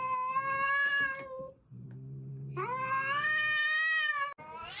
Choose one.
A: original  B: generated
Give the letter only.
A